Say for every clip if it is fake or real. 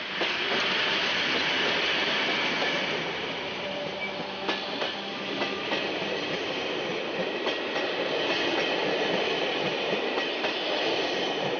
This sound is real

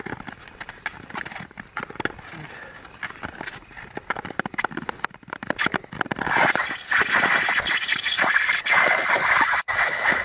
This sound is real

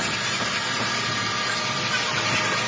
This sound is real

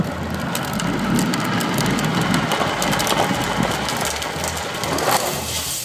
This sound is real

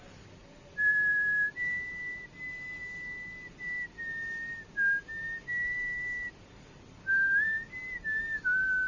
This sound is real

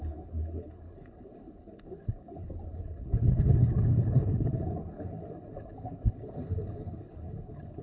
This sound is fake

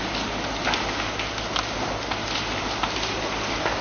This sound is real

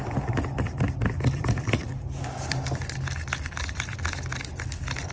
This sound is fake